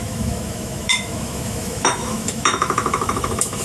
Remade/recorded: remade